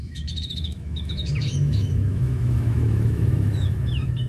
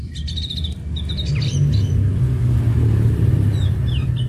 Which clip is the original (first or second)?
second